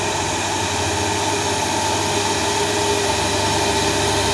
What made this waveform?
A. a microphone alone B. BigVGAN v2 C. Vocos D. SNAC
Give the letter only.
A